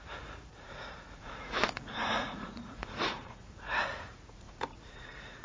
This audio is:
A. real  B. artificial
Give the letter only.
B